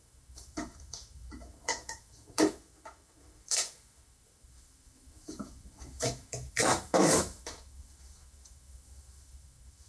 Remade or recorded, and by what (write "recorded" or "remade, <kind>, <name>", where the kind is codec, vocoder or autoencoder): remade, autoencoder, DAC-VAE